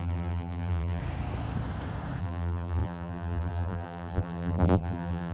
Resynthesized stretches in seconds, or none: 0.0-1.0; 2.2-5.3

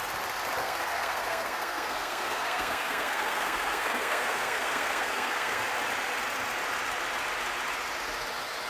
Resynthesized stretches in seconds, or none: 0.6-5.6